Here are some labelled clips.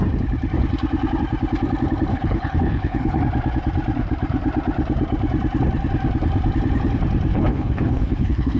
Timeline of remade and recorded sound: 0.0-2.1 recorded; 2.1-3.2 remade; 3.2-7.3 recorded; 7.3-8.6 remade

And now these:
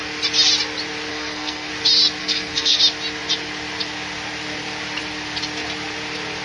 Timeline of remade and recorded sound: 0.0-1.1 recorded; 1.1-1.7 remade; 1.7-2.2 recorded; 2.2-2.8 remade; 2.8-6.4 recorded

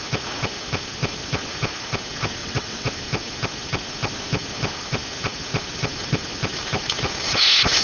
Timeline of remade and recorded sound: 0.0-2.4 recorded; 2.4-2.9 remade; 2.9-7.8 recorded

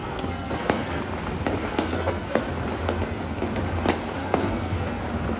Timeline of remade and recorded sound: 0.0-1.0 remade; 1.0-1.7 recorded; 1.7-2.4 remade; 2.4-4.2 recorded; 4.2-5.0 remade; 5.0-5.4 recorded

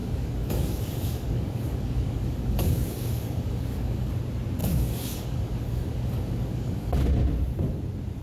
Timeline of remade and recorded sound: 0.0-4.1 remade; 4.1-4.6 recorded; 4.6-6.9 remade; 6.9-8.2 recorded

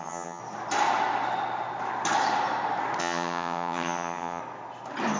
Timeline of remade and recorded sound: 0.0-0.4 remade; 0.4-3.0 recorded; 3.0-4.4 remade; 4.4-5.2 recorded